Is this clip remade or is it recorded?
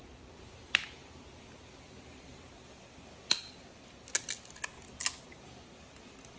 recorded